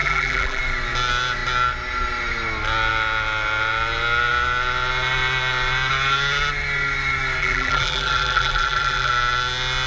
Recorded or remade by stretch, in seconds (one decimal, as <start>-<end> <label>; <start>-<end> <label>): 0.0-0.6 remade; 0.6-7.4 recorded; 7.4-9.1 remade; 9.1-9.9 recorded